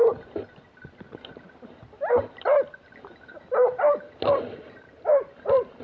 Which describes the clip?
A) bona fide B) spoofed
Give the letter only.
A